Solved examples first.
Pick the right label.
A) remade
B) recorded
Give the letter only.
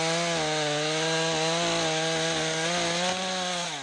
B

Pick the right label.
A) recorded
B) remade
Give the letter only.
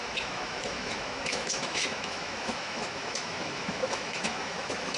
B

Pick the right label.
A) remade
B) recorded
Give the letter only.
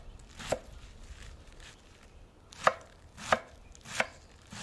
B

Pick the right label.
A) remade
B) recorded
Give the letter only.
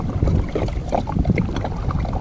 B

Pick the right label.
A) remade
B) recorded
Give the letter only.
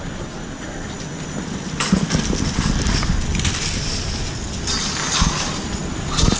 B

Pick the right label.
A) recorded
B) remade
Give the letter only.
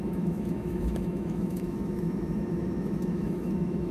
B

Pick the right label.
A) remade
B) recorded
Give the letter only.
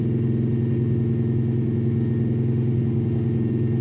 B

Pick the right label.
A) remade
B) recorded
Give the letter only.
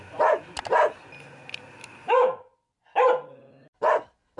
B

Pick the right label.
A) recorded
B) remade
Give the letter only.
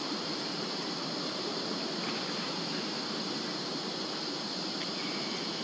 B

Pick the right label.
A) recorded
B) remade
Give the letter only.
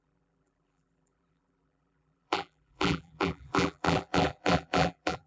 B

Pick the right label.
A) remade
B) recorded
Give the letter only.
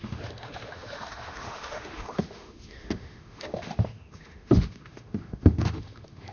A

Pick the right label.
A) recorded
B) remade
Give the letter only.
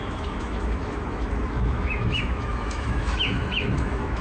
B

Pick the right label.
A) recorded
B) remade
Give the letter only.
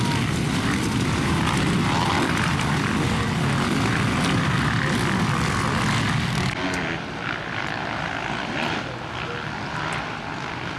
A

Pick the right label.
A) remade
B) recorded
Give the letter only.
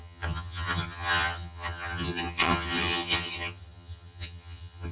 A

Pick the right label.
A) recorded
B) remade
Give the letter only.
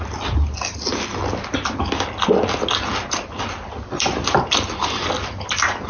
A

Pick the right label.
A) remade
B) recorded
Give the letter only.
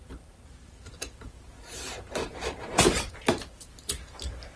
A